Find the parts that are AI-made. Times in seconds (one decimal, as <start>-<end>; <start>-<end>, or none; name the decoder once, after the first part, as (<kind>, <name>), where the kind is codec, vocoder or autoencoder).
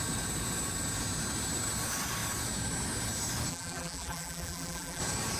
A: 3.5-5.0 (vocoder, BigVGAN v2)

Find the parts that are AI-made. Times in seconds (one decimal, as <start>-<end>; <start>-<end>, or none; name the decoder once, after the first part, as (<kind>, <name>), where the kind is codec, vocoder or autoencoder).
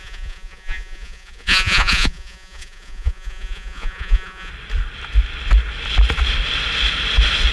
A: 0.0-4.5 (vocoder, Vocos)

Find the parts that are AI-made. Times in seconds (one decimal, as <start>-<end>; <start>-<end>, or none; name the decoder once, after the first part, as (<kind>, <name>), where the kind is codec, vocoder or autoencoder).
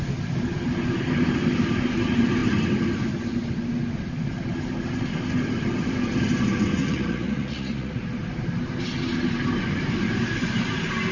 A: 6.8-8.0 (vocoder, Vocos)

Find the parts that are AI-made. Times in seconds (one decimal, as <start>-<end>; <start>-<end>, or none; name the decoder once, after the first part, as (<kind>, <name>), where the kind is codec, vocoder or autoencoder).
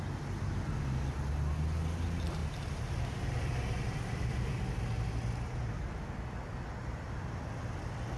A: 2.4-4.6 (vocoder, BigVGAN v2)